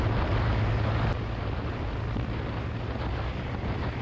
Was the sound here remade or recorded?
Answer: recorded